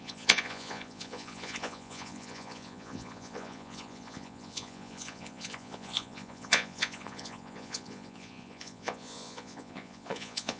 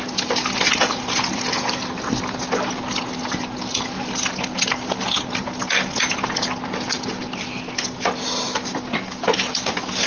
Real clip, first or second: second